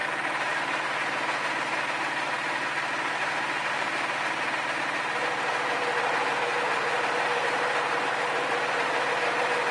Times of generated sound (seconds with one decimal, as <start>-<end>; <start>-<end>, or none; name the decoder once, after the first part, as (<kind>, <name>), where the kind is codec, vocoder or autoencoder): none

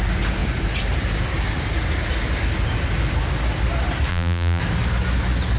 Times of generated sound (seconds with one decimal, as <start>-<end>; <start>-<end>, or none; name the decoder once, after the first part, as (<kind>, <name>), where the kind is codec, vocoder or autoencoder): 4.1-4.6 (vocoder, BigVGAN v2)

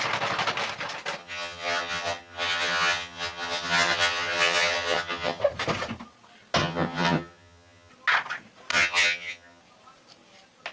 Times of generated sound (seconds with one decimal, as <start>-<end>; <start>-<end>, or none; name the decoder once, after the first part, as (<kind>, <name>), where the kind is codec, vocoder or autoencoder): 1.2-5.4 (vocoder, HiFi-GAN); 6.6-7.9; 8.7-9.6

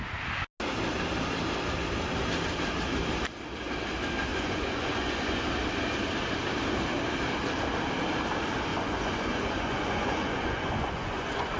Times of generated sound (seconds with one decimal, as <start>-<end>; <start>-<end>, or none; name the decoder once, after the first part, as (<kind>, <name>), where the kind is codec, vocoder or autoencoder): 4.3-5.4 (vocoder, Vocos); 8.7-11.6

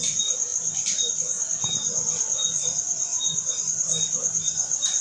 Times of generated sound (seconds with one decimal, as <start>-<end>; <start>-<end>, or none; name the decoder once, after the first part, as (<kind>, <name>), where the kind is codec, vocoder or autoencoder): 3.1-3.6 (vocoder, Vocos)

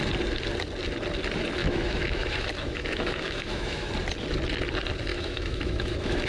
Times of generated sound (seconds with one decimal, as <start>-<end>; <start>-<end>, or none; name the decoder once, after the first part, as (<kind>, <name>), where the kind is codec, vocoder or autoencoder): 1.6-3.9 (autoencoder, DAC-VAE); 5.1-6.3

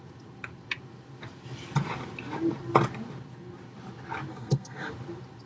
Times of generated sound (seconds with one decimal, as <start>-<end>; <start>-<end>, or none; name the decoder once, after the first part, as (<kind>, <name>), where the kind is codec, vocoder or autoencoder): 4.3-4.9 (codec, SNAC)